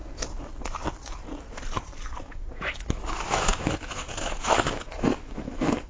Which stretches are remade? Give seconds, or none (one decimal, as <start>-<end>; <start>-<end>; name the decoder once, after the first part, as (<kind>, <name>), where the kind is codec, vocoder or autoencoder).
2.2-5.9 (autoencoder, DAC-VAE)